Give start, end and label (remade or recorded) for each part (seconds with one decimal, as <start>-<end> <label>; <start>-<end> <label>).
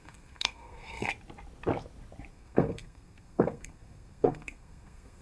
0.0-1.1 remade; 1.1-2.3 recorded; 2.3-5.2 remade